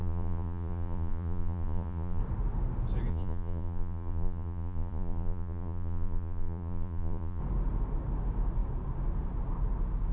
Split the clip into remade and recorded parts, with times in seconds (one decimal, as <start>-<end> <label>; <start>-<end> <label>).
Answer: 0.0-2.2 remade; 2.2-3.1 recorded; 3.1-7.4 remade; 7.4-10.1 recorded